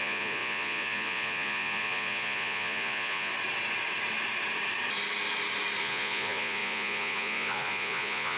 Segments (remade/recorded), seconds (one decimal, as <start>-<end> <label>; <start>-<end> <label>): 0.0-3.3 remade; 3.3-5.8 recorded; 5.8-8.4 remade